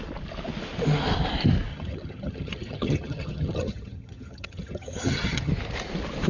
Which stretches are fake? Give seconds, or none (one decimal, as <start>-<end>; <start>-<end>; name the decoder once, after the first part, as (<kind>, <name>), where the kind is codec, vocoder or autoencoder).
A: 1.7-5.5 (vocoder, HiFi-GAN)